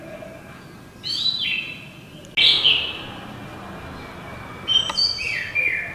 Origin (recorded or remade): recorded